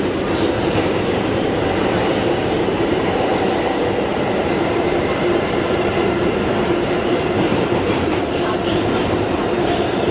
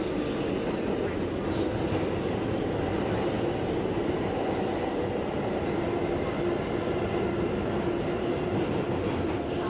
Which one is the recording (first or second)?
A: second